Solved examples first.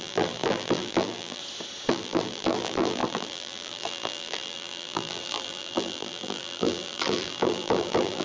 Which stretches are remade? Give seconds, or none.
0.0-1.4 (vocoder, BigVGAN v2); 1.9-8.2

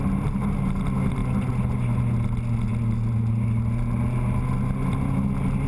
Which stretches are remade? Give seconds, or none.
none

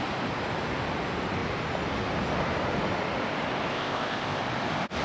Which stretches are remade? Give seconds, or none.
3.7-4.4 (codec, ZipCodec)

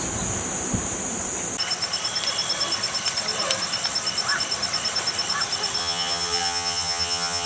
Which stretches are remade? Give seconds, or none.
5.8-7.5 (vocoder, HiFi-GAN)

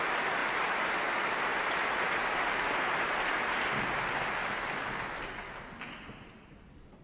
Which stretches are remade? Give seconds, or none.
0.4-1.1 (vocoder, BigVGAN v2)

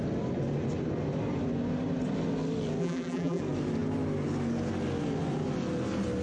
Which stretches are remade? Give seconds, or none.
2.8-3.4 (vocoder, BigVGAN v2)

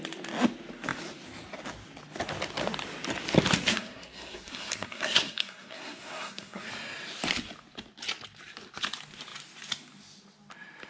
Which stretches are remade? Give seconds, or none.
3.7-6.7 (codec, SNAC)

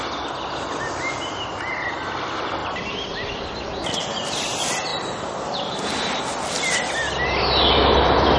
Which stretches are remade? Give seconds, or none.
2.6-3.3 (vocoder, BigVGAN v2); 4.9-5.7